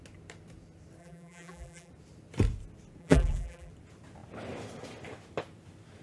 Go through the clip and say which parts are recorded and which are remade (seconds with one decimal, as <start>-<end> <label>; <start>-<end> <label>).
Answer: 0.0-1.0 recorded; 1.0-1.9 remade; 1.9-3.0 recorded; 3.0-3.7 remade; 3.7-6.0 recorded